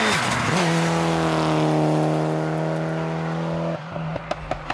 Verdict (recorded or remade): recorded